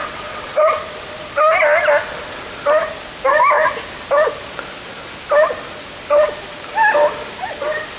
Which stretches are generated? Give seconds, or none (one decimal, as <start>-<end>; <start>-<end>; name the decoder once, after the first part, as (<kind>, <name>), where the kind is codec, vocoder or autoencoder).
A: 0.0-0.6 (vocoder, WaveNeXt)